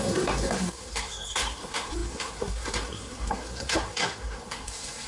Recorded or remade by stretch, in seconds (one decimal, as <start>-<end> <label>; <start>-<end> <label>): 0.0-5.1 remade